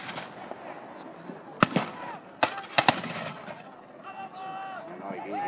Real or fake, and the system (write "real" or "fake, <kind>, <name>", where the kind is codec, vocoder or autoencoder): real